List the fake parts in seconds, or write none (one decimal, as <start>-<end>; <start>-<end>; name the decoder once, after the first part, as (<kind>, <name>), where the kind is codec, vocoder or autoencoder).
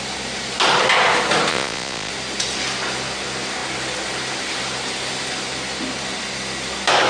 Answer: 1.5-2.1 (vocoder, Vocos)